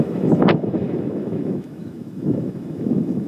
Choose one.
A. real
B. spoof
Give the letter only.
B